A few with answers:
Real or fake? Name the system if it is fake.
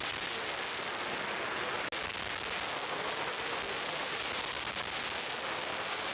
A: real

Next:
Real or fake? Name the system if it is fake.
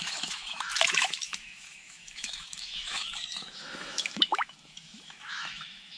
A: fake, autoencoder, DAC-VAE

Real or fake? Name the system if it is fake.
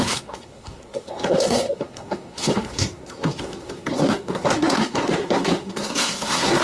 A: fake, codec, SNAC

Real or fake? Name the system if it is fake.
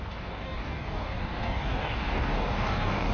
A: fake, codec, DAC